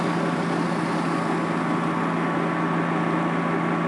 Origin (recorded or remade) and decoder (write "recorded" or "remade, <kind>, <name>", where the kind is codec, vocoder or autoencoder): recorded